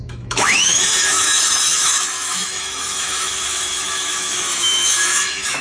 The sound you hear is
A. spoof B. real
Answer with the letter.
A